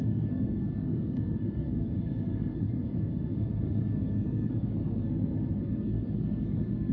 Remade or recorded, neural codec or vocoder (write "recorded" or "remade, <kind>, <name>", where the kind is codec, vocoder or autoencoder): remade, codec, SNAC